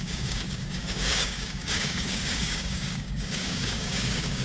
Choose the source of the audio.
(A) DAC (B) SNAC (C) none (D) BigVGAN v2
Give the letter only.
A